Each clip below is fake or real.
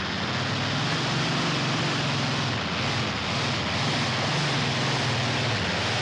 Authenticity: real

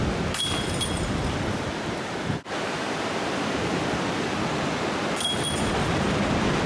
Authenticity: fake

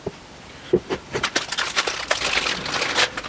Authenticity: real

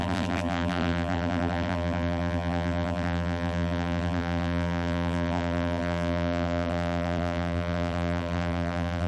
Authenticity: fake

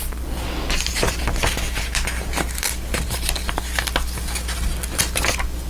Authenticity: real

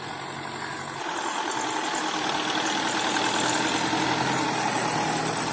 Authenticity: real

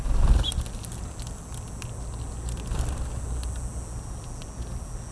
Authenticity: real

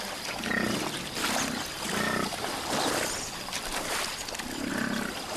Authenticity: real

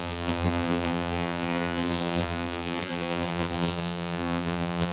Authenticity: fake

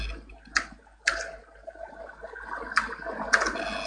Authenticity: real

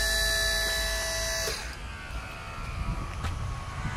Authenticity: real